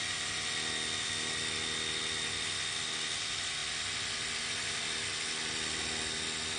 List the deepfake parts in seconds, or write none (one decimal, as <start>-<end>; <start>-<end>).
none